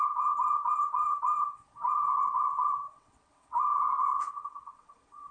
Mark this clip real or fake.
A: fake